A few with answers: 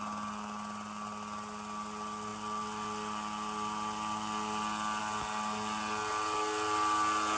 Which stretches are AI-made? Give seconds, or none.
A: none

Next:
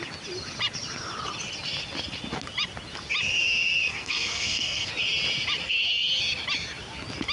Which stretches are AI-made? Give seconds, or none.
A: 3.9-4.9 (codec, SNAC)